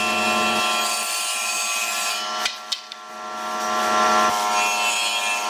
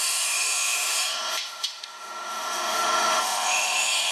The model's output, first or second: second